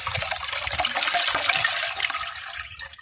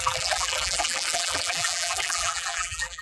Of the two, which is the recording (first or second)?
first